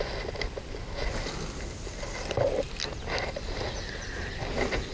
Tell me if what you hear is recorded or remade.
recorded